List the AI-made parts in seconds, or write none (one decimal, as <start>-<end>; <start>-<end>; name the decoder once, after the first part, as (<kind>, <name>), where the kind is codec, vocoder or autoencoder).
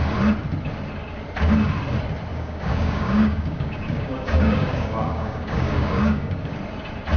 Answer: 2.3-6.6 (codec, DAC)